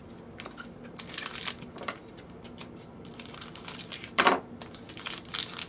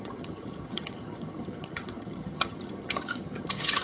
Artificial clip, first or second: second